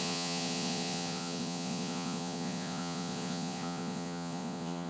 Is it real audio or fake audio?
fake